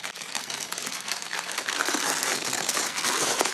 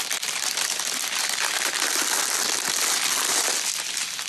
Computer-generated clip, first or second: first